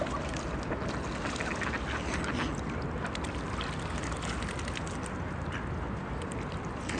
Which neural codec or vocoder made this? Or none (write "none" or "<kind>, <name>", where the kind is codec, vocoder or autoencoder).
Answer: none